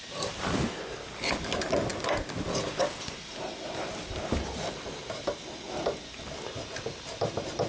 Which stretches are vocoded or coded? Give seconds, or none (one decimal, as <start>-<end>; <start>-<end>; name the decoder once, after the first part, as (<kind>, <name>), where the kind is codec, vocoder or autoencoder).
none